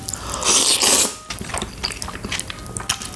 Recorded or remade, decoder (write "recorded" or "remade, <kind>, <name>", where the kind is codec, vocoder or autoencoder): recorded